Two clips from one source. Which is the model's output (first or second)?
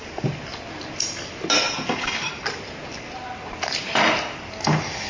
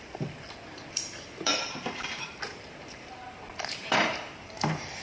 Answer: second